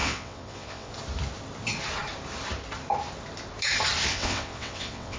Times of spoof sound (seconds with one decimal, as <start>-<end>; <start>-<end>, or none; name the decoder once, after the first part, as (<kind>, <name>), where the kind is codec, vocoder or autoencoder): 0.0-0.9 (vocoder, WaveNeXt); 4.1-5.2